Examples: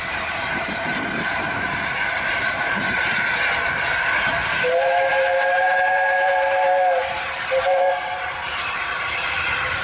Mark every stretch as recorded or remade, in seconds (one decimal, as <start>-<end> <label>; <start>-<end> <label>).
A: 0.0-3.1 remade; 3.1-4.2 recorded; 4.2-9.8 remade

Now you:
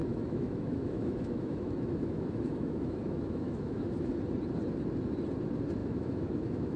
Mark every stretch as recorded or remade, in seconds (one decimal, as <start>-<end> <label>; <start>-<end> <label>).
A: 0.0-4.1 remade; 4.1-5.8 recorded; 5.8-6.8 remade

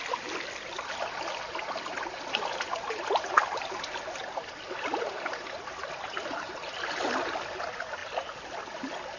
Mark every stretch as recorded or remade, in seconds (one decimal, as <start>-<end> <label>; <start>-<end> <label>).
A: 0.0-9.2 recorded

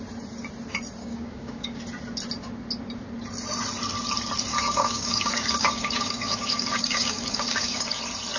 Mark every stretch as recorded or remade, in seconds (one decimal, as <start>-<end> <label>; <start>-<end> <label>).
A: 0.0-1.0 recorded; 1.0-1.8 remade; 1.8-4.5 recorded; 4.5-8.0 remade; 8.0-8.4 recorded